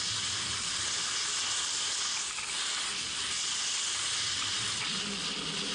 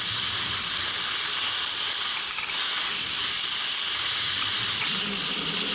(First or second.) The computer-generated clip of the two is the second